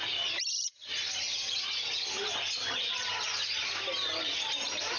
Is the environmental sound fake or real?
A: real